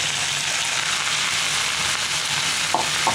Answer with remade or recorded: recorded